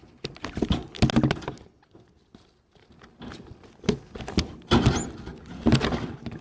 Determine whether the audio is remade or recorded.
recorded